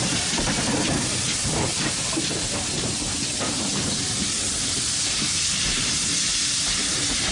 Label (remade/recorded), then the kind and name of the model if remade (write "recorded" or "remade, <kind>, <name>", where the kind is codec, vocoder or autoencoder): remade, vocoder, BigVGAN v2